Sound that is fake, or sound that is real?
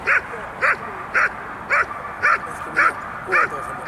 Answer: real